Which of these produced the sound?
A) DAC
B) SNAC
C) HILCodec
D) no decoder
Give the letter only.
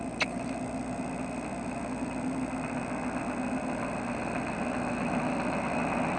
D